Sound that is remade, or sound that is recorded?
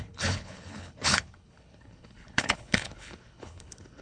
remade